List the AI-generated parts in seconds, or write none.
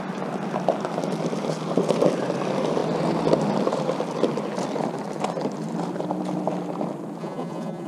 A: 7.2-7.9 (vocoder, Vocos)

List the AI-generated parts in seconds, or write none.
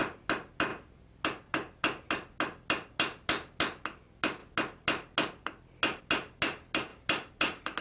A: none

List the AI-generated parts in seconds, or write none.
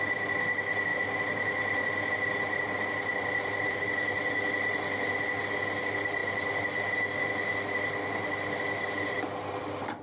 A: none